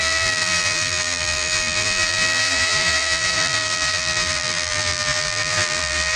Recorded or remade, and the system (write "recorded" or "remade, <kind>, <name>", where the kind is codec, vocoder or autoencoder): remade, vocoder, BigVGAN v2